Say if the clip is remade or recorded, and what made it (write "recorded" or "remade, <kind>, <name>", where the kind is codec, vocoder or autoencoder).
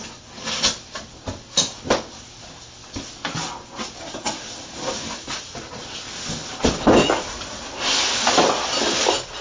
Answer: recorded